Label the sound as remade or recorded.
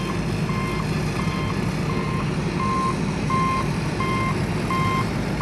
recorded